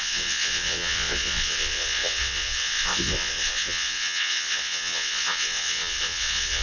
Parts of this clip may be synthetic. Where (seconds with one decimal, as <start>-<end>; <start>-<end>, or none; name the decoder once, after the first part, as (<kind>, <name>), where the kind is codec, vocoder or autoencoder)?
0.0-6.6 (vocoder, WaveNeXt)